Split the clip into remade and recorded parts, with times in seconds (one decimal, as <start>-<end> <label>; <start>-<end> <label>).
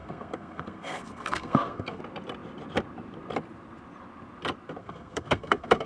0.0-2.0 remade; 2.0-4.8 recorded; 4.8-5.9 remade